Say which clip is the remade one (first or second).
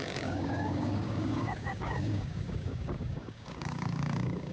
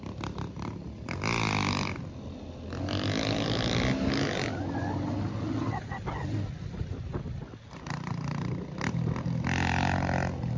first